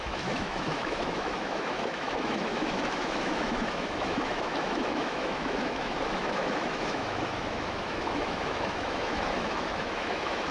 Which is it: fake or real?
fake